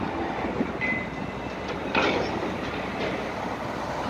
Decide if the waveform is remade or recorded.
recorded